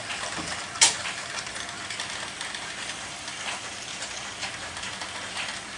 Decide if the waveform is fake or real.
real